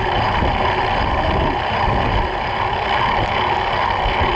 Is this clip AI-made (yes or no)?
no